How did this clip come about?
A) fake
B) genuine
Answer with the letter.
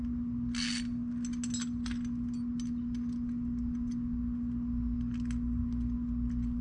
B